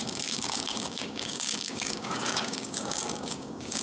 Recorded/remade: remade